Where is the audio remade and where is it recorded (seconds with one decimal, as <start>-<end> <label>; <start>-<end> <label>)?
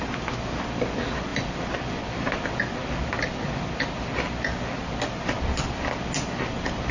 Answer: 0.0-6.9 recorded